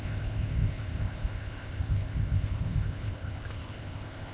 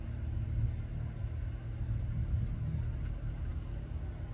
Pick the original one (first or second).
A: second